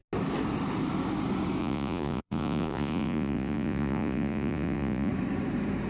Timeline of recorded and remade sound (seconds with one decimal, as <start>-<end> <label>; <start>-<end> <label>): 0.0-1.6 recorded; 1.6-5.1 remade; 5.1-5.9 recorded